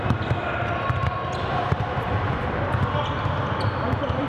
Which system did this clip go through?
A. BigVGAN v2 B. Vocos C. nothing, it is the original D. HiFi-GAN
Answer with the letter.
C